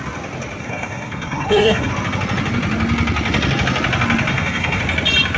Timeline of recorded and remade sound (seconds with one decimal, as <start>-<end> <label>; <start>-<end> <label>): 0.0-0.6 recorded; 0.6-1.9 remade; 1.9-4.3 recorded; 4.3-4.8 remade; 4.8-5.4 recorded